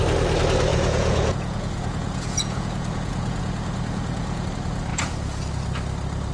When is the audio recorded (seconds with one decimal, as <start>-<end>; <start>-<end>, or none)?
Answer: 0.0-0.7; 4.5-4.9; 5.5-6.3